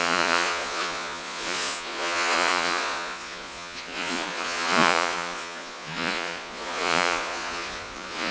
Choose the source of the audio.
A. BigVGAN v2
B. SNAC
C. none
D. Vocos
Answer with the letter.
D